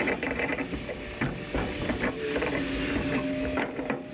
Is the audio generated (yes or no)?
no